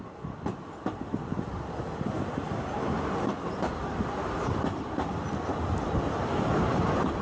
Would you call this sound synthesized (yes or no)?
no